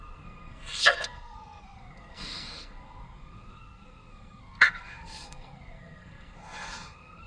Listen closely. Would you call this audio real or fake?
fake